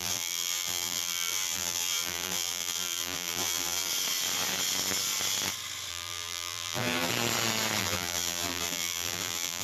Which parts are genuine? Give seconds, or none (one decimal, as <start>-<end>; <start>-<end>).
3.9-5.9; 7.1-7.8